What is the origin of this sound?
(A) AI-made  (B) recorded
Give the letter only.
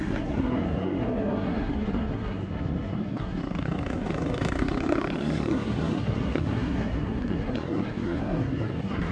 A